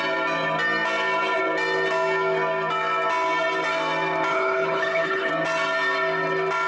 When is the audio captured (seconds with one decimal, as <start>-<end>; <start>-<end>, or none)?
0.0-4.3; 5.3-6.7